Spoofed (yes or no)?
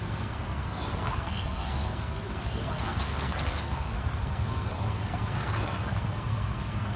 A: yes